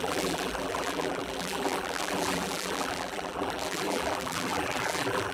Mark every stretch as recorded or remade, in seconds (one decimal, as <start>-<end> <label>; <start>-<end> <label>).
0.0-5.3 remade